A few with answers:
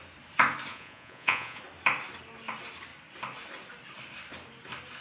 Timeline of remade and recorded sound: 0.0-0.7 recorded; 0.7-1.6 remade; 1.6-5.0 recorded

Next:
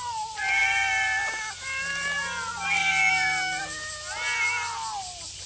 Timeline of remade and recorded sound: 0.0-5.5 recorded

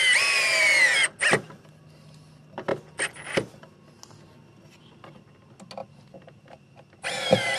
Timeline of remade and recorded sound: 0.0-7.6 recorded

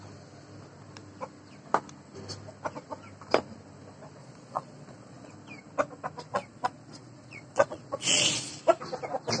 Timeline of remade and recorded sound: 0.0-4.2 recorded; 4.2-5.3 remade; 5.3-6.3 recorded; 6.3-8.5 remade; 8.5-9.4 recorded

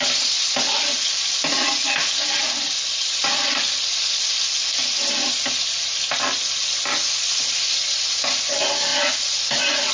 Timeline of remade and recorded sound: 0.0-9.9 recorded

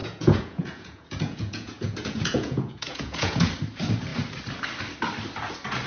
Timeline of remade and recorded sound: 0.0-3.5 remade; 3.5-5.9 recorded